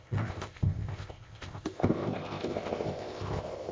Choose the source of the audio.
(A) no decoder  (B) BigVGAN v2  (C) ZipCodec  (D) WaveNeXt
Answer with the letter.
C